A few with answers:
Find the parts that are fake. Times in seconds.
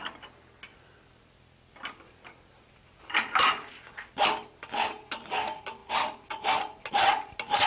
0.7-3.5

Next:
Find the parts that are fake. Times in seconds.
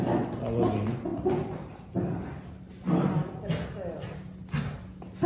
none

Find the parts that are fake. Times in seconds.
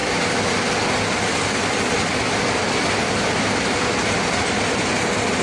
0.0-3.2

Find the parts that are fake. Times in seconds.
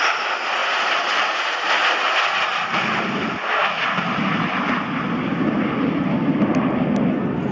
0.6-1.4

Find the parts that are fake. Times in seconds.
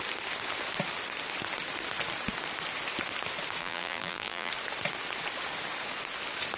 3.6-4.5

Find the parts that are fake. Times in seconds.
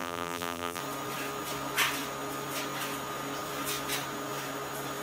0.0-0.8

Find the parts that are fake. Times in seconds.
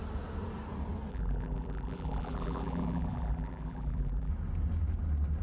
1.1-4.3